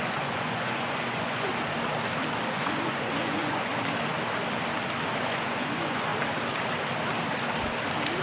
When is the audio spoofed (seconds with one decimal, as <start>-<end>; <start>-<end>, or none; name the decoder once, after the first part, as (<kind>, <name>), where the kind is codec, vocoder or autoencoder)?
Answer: 0.0-1.5 (vocoder, Vocos); 2.5-3.7; 5.2-6.1